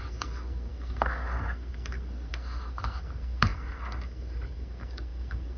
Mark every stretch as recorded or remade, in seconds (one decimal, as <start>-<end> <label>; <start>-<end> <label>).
0.0-5.6 remade